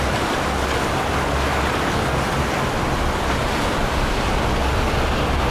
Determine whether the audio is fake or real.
real